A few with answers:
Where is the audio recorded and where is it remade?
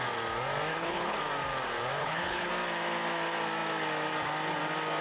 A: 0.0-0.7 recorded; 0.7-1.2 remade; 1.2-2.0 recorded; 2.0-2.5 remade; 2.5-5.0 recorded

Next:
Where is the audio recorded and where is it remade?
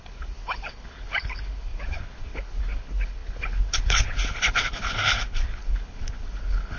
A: 0.0-6.8 remade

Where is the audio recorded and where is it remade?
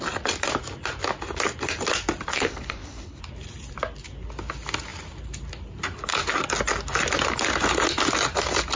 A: 0.0-2.3 recorded; 2.3-3.2 remade; 3.2-8.8 recorded